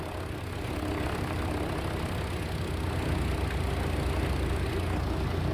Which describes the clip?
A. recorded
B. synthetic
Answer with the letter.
A